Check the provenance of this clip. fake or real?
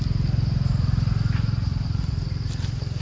real